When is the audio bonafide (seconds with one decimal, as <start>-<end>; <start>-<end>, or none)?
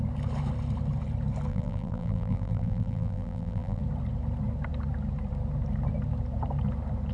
0.0-1.5; 3.8-7.1